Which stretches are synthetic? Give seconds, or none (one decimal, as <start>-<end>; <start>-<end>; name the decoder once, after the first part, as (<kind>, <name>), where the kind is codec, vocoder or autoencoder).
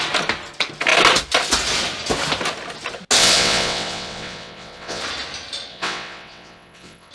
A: 3.2-5.0 (vocoder, WaveNeXt); 5.7-7.1